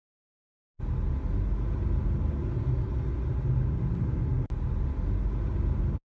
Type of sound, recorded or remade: recorded